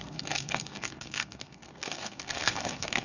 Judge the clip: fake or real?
fake